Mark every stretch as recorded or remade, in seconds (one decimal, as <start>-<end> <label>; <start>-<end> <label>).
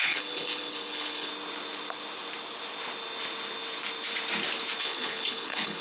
0.0-1.3 remade; 1.3-4.8 recorded; 4.8-5.8 remade